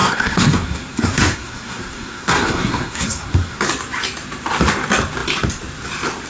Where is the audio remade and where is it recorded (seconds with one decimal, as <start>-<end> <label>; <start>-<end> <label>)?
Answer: 0.0-3.6 remade; 3.6-6.3 recorded

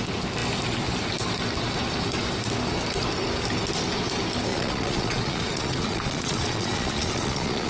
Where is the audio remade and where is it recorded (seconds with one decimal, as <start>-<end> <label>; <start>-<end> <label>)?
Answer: 0.0-4.5 recorded; 4.5-7.7 remade

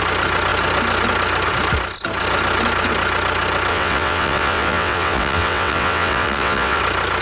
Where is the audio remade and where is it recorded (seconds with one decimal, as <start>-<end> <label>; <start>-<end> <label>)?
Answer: 0.0-3.7 recorded; 3.7-6.8 remade; 6.8-7.2 recorded

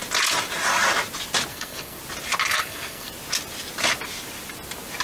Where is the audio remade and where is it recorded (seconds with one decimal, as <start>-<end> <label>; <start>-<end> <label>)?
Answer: 0.0-1.5 recorded; 1.5-2.0 remade; 2.0-2.4 recorded; 2.4-3.1 remade; 3.1-5.0 recorded

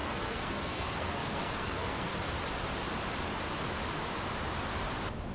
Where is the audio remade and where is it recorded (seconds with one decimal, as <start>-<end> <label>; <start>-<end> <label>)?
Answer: 0.0-2.1 remade; 2.1-5.3 recorded

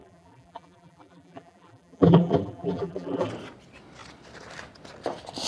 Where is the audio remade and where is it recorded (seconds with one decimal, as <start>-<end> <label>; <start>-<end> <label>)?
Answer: 0.0-3.3 remade; 3.3-5.5 recorded

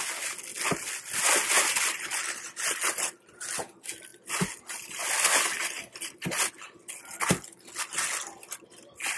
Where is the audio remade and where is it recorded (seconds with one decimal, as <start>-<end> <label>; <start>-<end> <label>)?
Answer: 0.0-9.2 recorded

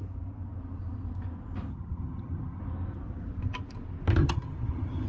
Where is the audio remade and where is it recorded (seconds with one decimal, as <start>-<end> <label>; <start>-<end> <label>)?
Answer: 0.0-1.7 recorded; 1.7-2.6 remade; 2.6-4.2 recorded; 4.2-5.1 remade